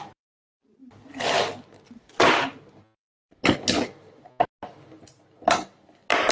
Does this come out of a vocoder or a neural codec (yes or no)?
no